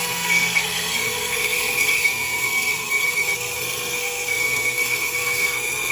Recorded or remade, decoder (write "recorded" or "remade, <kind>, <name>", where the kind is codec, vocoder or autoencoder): remade, codec, SNAC